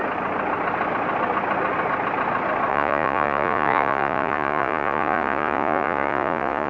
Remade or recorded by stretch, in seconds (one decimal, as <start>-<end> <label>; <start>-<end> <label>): 0.0-2.7 recorded; 2.7-6.7 remade

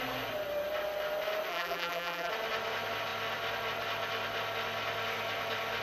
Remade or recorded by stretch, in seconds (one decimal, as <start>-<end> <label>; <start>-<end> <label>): 0.0-1.5 recorded; 1.5-2.3 remade; 2.3-5.8 recorded

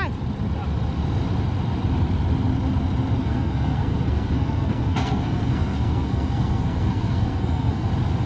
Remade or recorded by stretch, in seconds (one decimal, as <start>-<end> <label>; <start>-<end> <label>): 0.0-3.2 recorded; 3.2-7.9 remade; 7.9-8.3 recorded

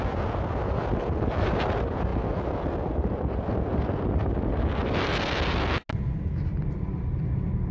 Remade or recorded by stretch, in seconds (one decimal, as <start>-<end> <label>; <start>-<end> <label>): 0.0-7.7 recorded

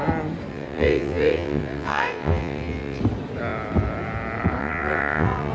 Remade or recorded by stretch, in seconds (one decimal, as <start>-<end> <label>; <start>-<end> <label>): 0.0-0.5 recorded; 0.5-3.0 remade; 3.0-4.6 recorded; 4.6-5.5 remade

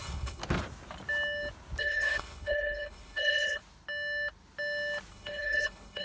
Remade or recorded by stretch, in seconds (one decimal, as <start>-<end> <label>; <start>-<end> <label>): 0.0-0.4 remade; 0.4-1.8 recorded; 1.8-3.6 remade; 3.6-5.1 recorded; 5.1-6.0 remade

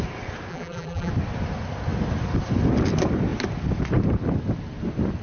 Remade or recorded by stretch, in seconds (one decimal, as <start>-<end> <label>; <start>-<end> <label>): 0.0-0.5 recorded; 0.5-1.1 remade; 1.1-5.2 recorded